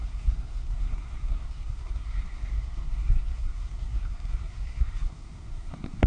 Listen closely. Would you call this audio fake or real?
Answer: fake